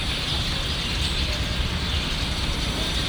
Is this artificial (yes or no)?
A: yes